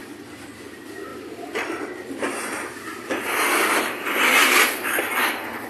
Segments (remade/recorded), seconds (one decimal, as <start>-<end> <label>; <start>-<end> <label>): 0.0-5.7 recorded